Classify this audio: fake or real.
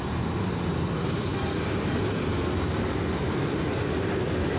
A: real